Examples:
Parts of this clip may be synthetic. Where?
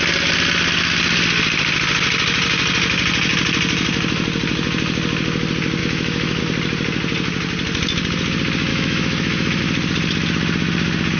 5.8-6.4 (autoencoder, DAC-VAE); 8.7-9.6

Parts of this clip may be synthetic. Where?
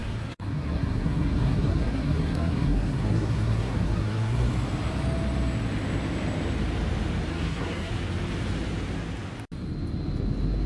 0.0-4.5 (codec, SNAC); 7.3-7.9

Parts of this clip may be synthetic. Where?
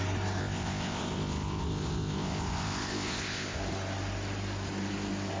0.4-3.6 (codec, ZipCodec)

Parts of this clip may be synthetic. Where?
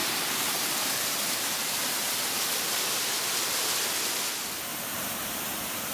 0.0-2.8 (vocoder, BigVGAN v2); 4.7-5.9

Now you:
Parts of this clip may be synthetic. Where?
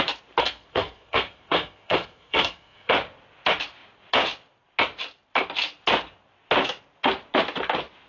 0.4-2.9 (codec, SNAC)